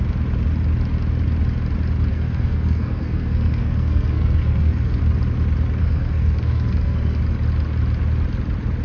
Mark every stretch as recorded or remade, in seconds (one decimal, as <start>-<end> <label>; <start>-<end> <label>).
0.0-2.1 recorded; 2.1-5.0 remade; 5.0-5.8 recorded; 5.8-7.2 remade; 7.2-8.8 recorded